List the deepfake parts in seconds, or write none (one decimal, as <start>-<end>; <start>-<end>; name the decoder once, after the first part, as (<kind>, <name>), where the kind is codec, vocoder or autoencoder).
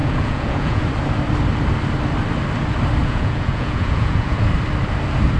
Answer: 0.0-0.8 (vocoder, Vocos); 3.0-4.5